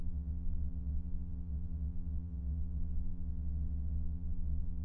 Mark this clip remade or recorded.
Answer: remade